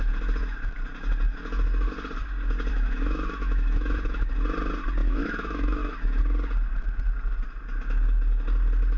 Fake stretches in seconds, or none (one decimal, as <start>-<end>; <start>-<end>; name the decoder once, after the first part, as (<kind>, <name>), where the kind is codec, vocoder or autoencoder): 2.7-4.3 (autoencoder, DAC-VAE); 5.0-6.2